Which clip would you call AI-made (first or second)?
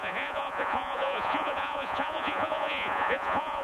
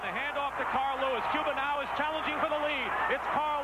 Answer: first